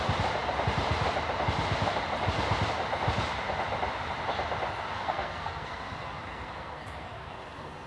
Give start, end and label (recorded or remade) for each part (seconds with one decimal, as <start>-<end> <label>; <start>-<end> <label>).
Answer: 0.0-4.9 recorded; 4.9-7.9 remade

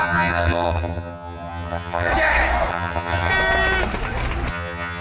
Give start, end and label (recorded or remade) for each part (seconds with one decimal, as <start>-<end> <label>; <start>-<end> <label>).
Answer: 0.0-2.1 remade; 2.1-2.7 recorded; 2.7-3.3 remade; 3.3-4.5 recorded; 4.5-5.0 remade

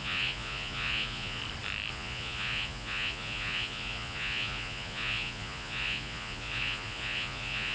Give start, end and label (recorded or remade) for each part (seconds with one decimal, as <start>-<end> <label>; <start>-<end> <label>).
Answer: 0.0-1.4 remade; 1.4-1.9 recorded; 1.9-7.7 remade

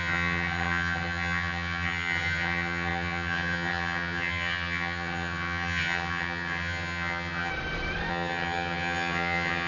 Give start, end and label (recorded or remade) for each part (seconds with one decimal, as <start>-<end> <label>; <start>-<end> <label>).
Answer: 0.0-7.5 remade; 7.5-8.1 recorded; 8.1-9.7 remade